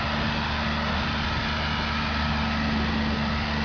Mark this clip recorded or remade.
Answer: recorded